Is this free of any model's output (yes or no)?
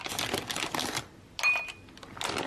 yes